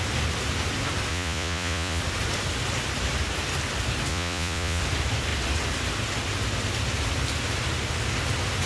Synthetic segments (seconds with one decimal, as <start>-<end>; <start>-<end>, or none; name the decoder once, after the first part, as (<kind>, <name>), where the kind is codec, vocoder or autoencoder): 1.1-2.0 (vocoder, Vocos); 4.1-4.8